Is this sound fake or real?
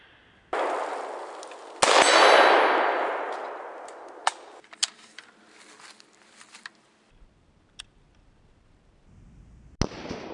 real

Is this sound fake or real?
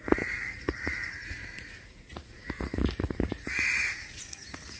fake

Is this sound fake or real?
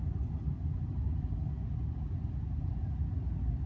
real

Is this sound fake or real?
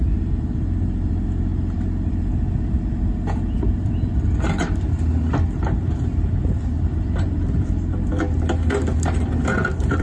real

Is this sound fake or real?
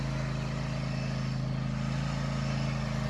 real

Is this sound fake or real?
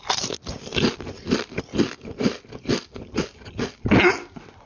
real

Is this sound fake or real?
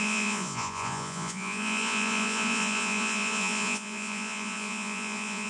fake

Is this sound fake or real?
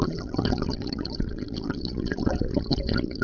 fake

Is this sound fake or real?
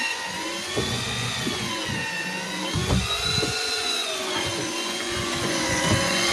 fake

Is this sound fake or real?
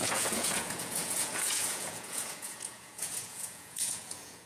fake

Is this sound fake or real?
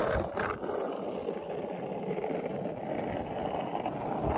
real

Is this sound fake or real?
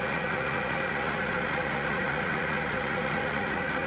fake